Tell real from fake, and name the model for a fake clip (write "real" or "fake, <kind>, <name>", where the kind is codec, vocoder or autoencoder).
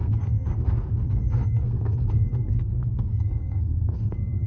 fake, codec, SNAC